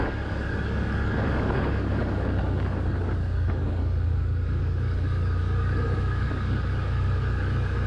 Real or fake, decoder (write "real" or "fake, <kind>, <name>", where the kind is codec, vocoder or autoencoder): fake, codec, DAC